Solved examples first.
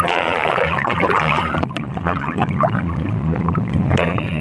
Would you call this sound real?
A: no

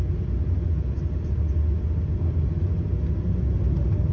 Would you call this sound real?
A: yes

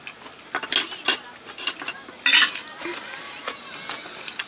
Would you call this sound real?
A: yes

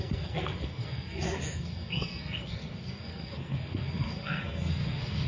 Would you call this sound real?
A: no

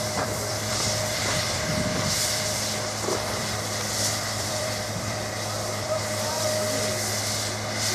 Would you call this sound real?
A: no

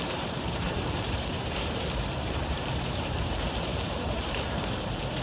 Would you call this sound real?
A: no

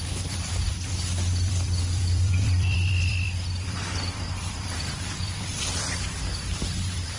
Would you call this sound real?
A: no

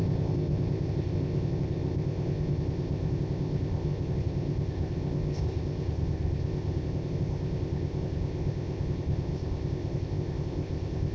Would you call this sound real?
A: no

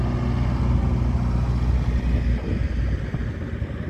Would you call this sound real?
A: yes